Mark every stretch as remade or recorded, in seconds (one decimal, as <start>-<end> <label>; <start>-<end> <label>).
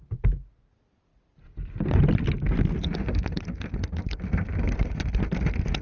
0.0-5.8 recorded